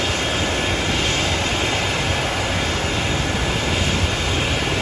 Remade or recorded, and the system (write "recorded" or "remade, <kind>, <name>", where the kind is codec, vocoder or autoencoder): recorded